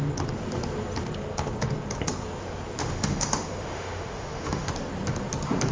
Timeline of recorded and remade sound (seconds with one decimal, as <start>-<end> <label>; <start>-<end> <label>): 0.0-2.8 recorded; 2.8-4.7 remade; 4.7-5.7 recorded